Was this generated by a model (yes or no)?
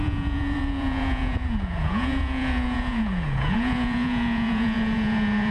yes